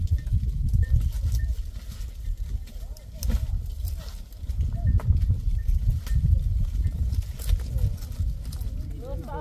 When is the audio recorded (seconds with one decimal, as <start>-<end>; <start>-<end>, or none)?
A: 0.0-9.4